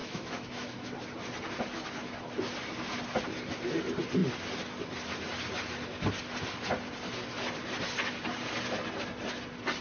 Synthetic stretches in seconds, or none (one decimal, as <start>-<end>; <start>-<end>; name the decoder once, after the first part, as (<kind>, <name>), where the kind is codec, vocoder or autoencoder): 0.0-0.9 (autoencoder, DAC-VAE)